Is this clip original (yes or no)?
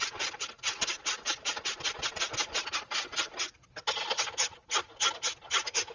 yes